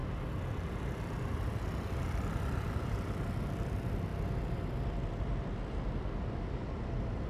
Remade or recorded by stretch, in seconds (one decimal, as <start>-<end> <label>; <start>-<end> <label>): 0.0-4.1 remade; 4.1-4.8 recorded; 4.8-7.3 remade